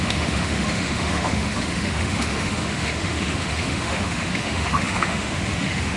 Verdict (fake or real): fake